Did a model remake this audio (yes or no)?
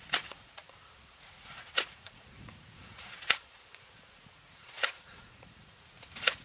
yes